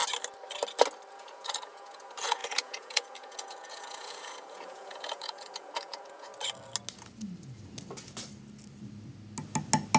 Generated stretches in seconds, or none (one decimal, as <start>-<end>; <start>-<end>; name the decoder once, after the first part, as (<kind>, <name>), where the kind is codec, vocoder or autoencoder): 1.1-6.3 (vocoder, Vocos)